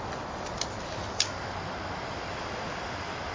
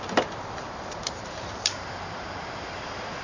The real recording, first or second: first